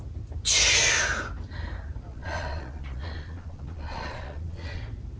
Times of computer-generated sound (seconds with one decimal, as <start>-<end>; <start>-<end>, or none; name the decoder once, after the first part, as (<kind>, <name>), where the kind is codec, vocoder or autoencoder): 2.1-4.8 (vocoder, Vocos)